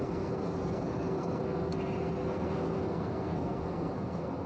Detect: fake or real fake